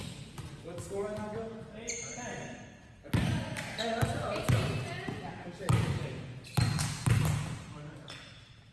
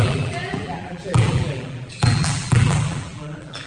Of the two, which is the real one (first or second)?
first